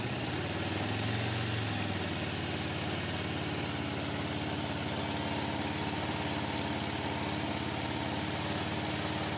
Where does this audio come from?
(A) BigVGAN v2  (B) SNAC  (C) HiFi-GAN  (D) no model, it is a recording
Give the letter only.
D